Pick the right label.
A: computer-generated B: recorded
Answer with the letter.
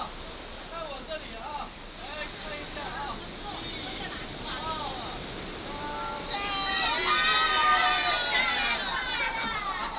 B